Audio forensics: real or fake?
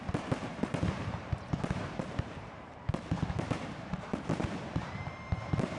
fake